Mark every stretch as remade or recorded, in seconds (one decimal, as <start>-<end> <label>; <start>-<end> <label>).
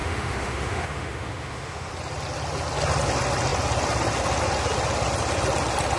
0.0-1.9 remade; 1.9-6.0 recorded